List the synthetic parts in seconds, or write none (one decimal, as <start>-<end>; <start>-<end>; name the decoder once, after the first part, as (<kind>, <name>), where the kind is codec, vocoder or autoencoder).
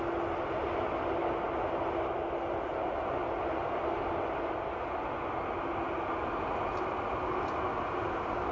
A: 3.2-3.8 (vocoder, BigVGAN v2)